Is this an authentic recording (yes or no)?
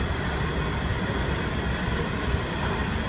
yes